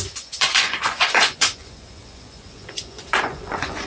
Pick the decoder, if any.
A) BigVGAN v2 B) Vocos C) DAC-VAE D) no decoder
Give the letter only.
B